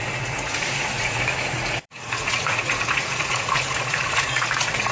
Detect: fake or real fake